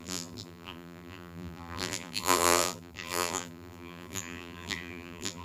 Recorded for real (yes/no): no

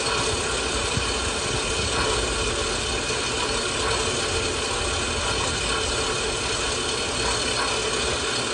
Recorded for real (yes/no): yes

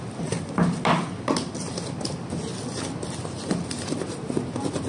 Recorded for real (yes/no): yes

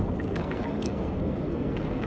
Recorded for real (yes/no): no